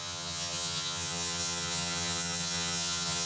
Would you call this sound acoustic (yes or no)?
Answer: no